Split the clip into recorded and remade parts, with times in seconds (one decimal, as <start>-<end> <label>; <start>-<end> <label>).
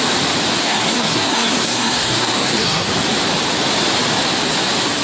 0.0-0.6 recorded; 0.6-2.9 remade; 2.9-5.0 recorded